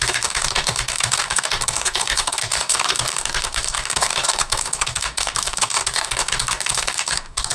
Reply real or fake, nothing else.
fake